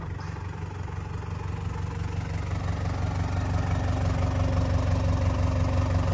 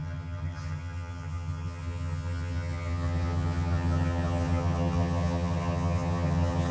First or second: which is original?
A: first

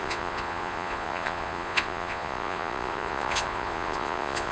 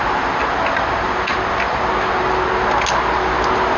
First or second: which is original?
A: second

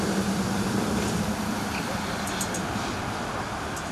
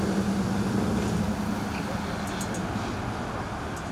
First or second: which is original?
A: second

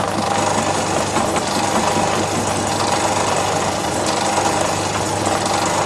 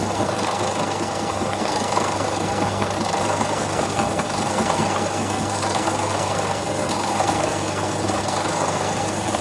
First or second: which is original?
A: first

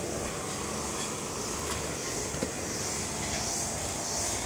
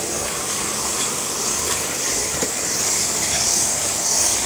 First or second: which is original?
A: first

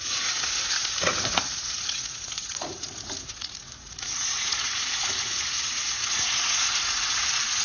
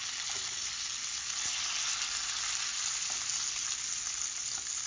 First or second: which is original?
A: second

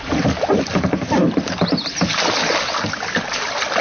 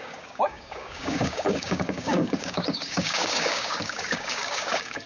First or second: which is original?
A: first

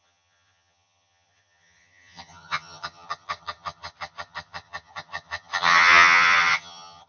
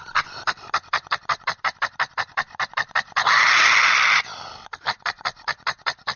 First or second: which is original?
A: second